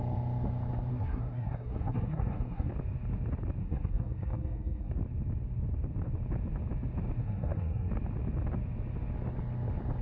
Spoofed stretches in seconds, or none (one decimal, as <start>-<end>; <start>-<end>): 0.9-2.7; 3.6-4.9; 7.2-7.9